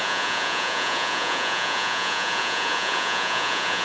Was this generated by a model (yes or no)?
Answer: yes